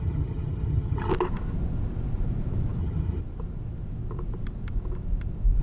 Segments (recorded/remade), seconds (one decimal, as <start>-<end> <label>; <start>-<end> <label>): 0.0-1.1 remade; 1.1-2.8 recorded; 2.8-3.2 remade; 3.2-5.6 recorded